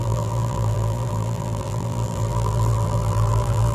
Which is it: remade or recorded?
remade